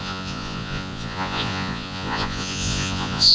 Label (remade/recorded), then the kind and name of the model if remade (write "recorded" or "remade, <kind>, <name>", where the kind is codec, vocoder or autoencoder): remade, vocoder, Vocos